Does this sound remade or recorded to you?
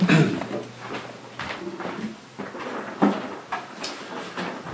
recorded